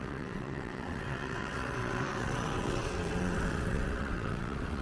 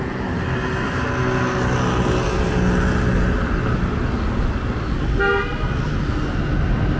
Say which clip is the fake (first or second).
first